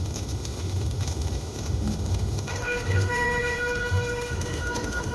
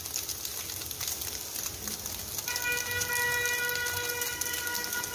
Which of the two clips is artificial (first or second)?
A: first